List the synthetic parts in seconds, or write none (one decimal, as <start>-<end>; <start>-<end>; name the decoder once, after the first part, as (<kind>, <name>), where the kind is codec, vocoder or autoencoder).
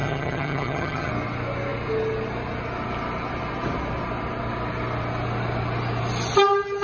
0.0-1.1 (vocoder, HiFi-GAN)